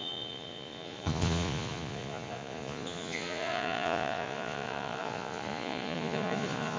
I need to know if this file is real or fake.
fake